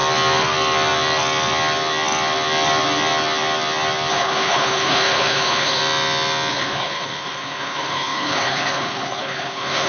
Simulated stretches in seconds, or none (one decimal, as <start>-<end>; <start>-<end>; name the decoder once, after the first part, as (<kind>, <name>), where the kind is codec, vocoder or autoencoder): 4.1-5.8 (codec, HILCodec); 6.5-9.9